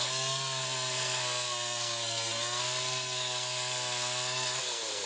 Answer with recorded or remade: remade